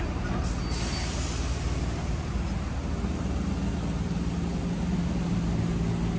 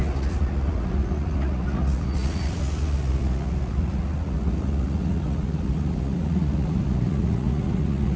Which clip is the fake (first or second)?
second